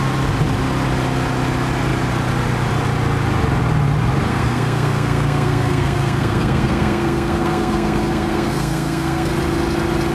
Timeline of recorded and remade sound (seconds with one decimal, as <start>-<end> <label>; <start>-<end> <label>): 0.0-4.3 recorded; 4.3-9.3 remade; 9.3-10.1 recorded